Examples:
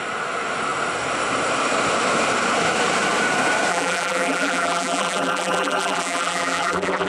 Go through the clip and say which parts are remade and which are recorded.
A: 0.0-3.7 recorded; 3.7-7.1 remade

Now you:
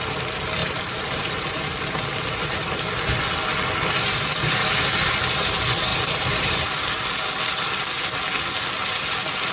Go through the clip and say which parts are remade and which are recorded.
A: 0.0-0.6 recorded; 0.6-2.9 remade; 2.9-5.9 recorded; 5.9-6.9 remade; 6.9-9.5 recorded

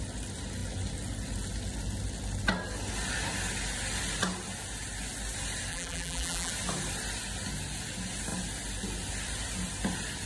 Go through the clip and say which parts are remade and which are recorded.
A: 0.0-5.7 recorded; 5.7-6.5 remade; 6.5-10.3 recorded

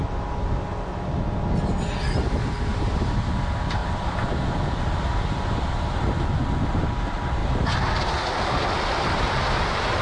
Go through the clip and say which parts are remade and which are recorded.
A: 0.0-2.7 recorded; 2.7-3.4 remade; 3.4-3.8 recorded; 3.8-5.7 remade; 5.7-7.4 recorded; 7.4-8.0 remade; 8.0-10.0 recorded